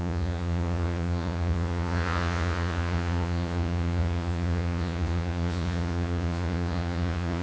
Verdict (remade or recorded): remade